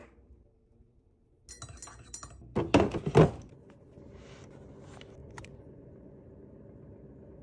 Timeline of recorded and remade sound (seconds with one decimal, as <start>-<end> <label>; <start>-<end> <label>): 0.0-5.2 recorded; 5.2-6.2 remade; 6.2-7.4 recorded